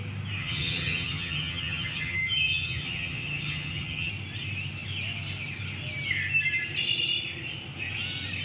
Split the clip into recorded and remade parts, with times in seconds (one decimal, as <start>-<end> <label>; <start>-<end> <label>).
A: 0.0-0.4 recorded; 0.4-4.1 remade; 4.1-8.4 recorded